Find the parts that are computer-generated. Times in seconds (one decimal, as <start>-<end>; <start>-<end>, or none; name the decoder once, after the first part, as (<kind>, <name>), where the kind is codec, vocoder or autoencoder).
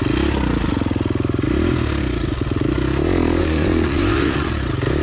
3.4-4.5 (vocoder, Vocos)